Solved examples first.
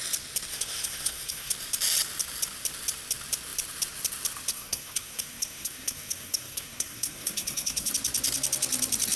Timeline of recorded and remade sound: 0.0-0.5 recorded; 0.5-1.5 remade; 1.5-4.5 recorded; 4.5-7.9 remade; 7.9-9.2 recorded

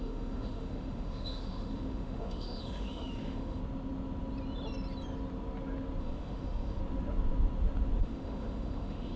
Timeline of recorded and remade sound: 0.0-3.6 remade; 3.6-6.0 recorded; 6.0-6.8 remade; 6.8-8.0 recorded; 8.0-9.2 remade

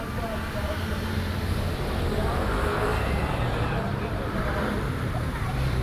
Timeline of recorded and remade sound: 0.0-5.8 remade

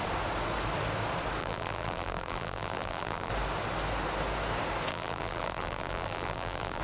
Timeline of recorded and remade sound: 0.0-1.4 recorded; 1.4-3.3 remade; 3.3-4.9 recorded; 4.9-6.8 remade

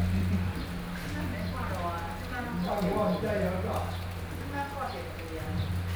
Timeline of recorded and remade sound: 0.0-6.0 recorded